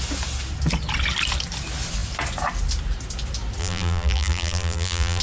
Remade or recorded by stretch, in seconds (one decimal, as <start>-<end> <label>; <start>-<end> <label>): 0.0-3.6 recorded; 3.6-5.2 remade